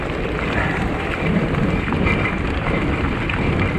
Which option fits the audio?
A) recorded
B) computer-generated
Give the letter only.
B